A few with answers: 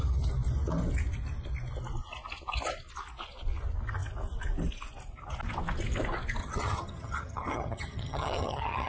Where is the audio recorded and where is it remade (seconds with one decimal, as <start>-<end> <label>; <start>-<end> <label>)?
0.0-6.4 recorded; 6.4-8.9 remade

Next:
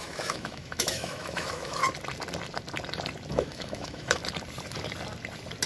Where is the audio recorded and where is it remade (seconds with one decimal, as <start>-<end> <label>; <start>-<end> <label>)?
0.0-1.8 remade; 1.8-3.3 recorded; 3.3-4.2 remade; 4.2-5.7 recorded

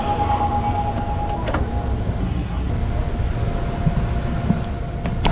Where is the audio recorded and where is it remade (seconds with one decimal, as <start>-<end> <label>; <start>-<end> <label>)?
0.0-2.2 recorded; 2.2-2.7 remade; 2.7-5.3 recorded